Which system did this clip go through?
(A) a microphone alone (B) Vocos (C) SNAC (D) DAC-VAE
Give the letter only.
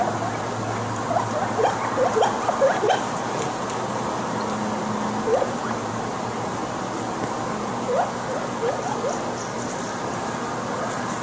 A